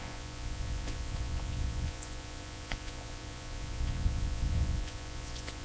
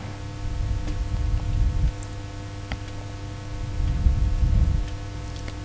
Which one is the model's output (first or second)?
first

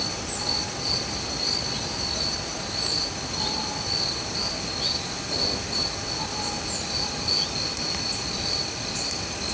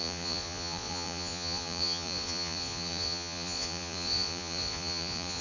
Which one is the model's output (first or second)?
second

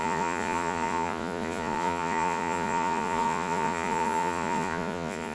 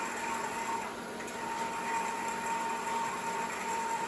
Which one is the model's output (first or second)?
first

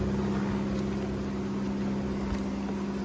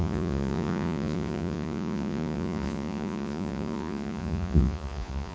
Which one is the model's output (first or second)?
second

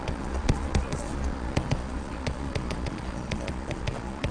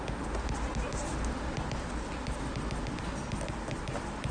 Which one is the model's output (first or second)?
first